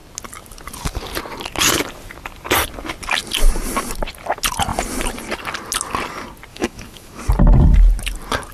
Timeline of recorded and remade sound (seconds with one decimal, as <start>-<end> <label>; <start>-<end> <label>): 0.0-6.5 recorded; 6.5-7.2 remade; 7.2-8.5 recorded